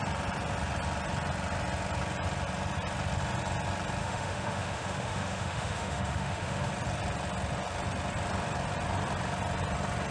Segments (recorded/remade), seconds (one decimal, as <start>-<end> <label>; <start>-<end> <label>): 0.0-4.0 recorded; 4.0-6.7 remade; 6.7-10.1 recorded